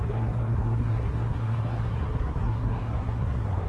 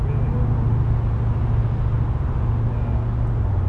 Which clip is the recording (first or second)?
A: second